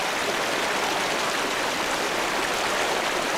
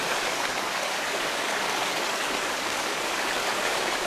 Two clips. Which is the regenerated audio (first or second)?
second